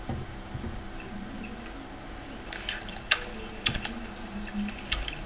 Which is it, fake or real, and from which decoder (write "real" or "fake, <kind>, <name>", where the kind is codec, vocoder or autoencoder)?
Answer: real